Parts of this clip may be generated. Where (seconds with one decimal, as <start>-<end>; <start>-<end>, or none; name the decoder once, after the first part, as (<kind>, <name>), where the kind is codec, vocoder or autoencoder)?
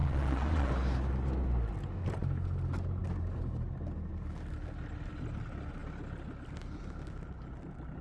0.0-0.7 (vocoder, Vocos)